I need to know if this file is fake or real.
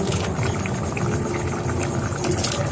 real